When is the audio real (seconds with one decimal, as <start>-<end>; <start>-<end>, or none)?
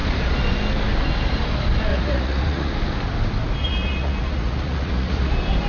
0.0-1.9; 2.7-3.6; 5.3-5.7